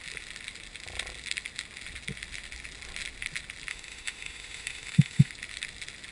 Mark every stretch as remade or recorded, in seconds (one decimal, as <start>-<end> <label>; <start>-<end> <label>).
0.0-3.7 recorded; 3.7-5.3 remade; 5.3-6.1 recorded